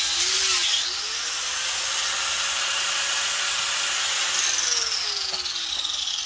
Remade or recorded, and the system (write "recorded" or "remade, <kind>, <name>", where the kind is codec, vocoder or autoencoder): recorded